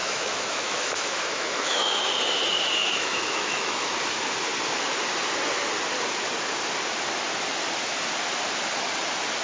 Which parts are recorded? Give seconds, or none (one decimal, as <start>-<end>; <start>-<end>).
2.0-2.8; 4.0-9.4